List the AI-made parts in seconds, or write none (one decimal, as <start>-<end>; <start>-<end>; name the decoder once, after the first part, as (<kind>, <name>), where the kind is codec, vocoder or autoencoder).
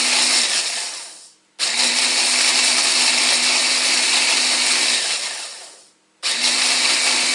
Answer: none